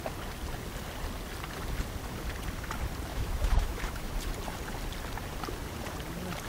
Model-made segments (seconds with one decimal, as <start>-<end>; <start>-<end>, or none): 3.1-4.1